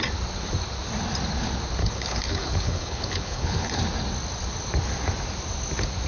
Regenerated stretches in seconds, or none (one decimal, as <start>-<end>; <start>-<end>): 1.8-3.8